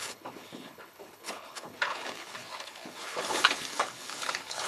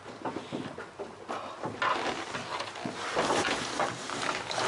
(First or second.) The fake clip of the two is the first